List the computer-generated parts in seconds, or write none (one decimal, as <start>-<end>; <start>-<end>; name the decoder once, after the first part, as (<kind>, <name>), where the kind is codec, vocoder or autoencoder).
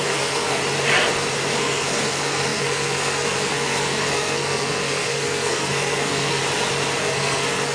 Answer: 0.0-0.6 (codec, SNAC); 1.5-6.4; 7.0-7.7